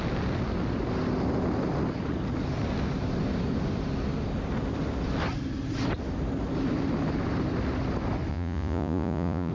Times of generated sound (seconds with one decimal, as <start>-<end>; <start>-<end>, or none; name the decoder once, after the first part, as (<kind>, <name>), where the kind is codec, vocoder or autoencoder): 8.3-9.5 (vocoder, Vocos)